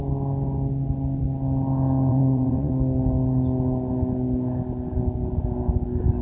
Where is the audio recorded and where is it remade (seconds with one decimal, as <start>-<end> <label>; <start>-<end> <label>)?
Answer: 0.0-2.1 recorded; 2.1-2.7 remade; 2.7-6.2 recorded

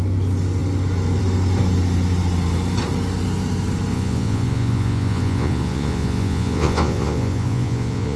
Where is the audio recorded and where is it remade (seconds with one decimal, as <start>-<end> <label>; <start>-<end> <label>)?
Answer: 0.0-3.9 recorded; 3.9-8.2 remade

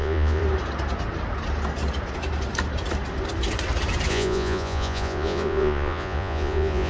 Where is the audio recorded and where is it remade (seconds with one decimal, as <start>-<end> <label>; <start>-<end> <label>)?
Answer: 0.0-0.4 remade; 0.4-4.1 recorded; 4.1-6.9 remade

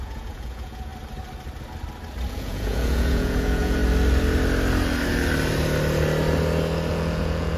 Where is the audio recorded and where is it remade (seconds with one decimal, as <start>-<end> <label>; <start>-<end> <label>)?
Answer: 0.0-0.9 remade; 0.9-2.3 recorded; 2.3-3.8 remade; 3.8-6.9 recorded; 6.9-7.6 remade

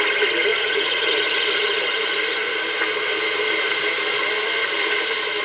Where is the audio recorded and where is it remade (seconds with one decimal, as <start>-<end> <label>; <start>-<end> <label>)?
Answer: 0.0-0.5 recorded; 0.5-1.1 remade; 1.1-5.4 recorded